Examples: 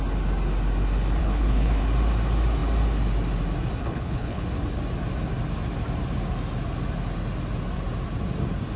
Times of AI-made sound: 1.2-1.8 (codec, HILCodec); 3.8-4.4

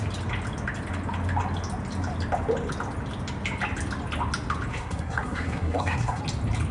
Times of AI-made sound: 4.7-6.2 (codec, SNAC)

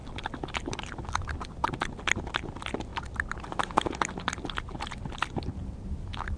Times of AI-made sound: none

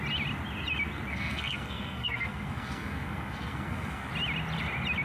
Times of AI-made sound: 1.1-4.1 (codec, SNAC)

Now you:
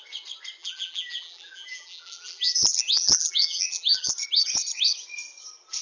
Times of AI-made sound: 0.6-4.1 (vocoder, BigVGAN v2)

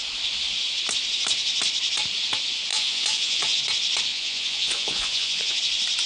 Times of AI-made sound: 2.7-3.6 (vocoder, Vocos); 4.1-5.6

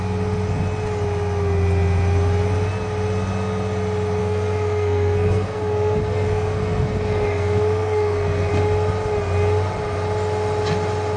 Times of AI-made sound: 4.2-8.5 (codec, SNAC)

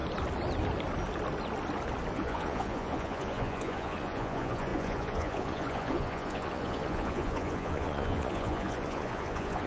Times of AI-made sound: 2.1-9.7 (vocoder, Vocos)